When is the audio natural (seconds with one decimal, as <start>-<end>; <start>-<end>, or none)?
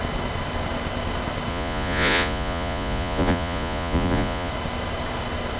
0.0-1.5; 4.5-5.6